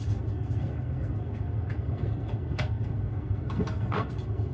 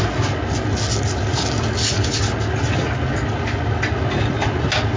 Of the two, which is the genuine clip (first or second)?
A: second